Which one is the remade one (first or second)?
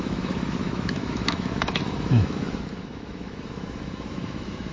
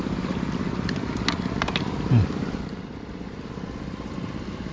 first